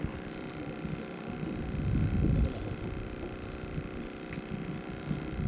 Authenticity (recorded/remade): recorded